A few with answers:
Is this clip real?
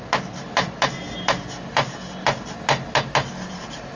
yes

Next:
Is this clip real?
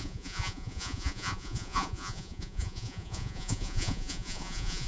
no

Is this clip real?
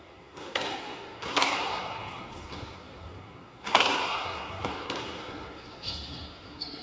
no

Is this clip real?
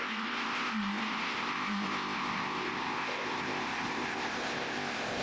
no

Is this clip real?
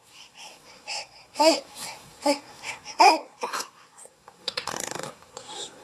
no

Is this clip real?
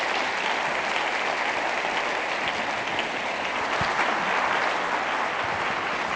yes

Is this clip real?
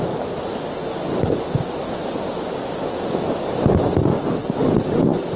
yes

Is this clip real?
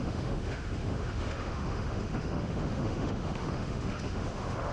no